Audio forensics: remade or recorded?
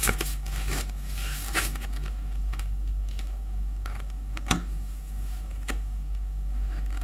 remade